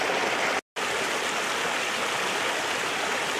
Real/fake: real